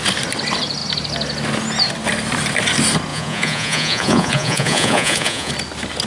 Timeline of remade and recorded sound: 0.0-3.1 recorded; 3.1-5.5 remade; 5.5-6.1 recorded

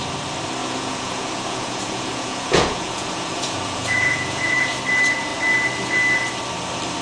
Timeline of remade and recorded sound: 0.0-0.6 recorded; 0.6-4.8 remade; 4.8-7.0 recorded